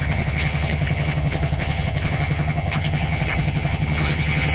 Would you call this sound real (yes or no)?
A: no